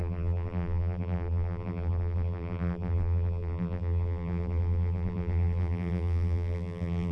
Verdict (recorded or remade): remade